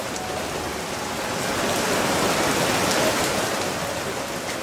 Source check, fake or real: real